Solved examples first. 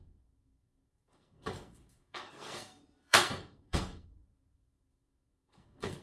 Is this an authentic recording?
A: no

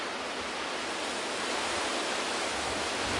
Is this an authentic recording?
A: yes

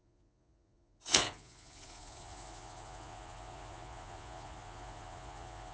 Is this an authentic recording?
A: no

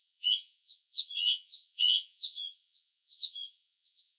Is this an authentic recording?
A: no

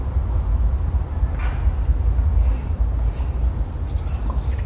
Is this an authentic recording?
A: yes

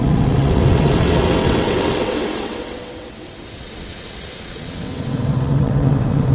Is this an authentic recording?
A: no